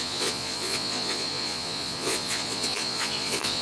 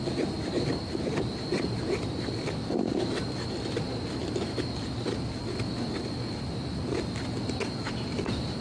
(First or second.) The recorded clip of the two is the second